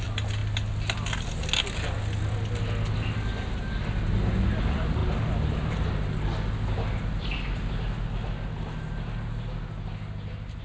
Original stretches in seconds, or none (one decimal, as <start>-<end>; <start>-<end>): 0.0-10.6